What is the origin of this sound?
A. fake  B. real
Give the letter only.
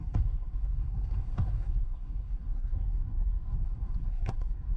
A